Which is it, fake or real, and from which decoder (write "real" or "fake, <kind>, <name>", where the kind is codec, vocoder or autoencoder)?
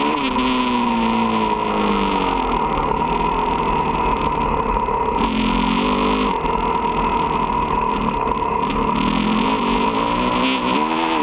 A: real